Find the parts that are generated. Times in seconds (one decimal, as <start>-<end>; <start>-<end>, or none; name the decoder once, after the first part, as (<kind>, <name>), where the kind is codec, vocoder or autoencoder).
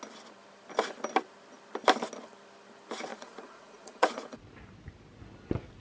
3.1-4.4 (vocoder, Vocos)